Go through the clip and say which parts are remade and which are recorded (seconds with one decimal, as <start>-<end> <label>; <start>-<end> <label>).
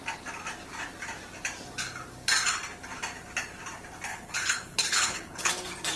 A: 0.0-4.1 recorded; 4.1-5.5 remade; 5.5-6.0 recorded